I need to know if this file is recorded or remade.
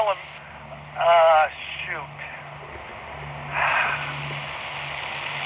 recorded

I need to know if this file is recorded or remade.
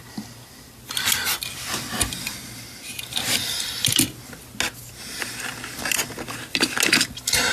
recorded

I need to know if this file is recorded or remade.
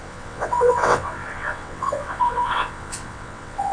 remade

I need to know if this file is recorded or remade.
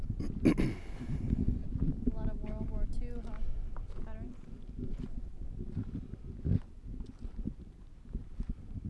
recorded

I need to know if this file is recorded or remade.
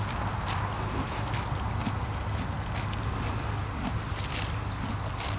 recorded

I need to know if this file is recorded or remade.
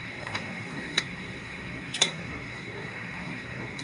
remade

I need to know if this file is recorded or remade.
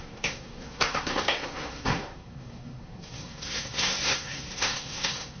remade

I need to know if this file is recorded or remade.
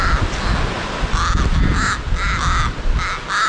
recorded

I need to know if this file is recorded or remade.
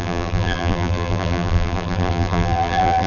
remade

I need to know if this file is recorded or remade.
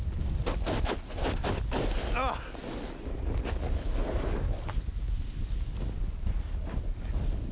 recorded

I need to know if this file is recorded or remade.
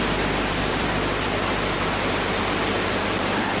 remade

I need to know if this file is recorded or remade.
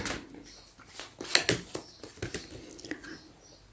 recorded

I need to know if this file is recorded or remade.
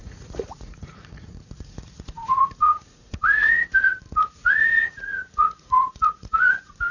remade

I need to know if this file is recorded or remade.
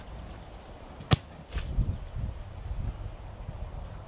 recorded